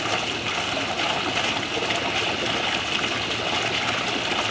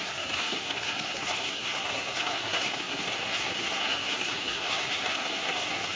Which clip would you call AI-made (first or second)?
second